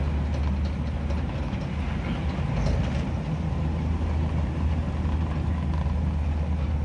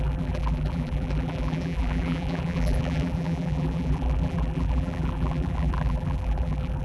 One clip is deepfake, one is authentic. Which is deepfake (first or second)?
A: second